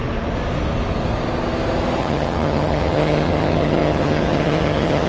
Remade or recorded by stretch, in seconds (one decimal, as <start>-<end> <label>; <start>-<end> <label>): 0.0-2.0 recorded; 2.0-5.1 remade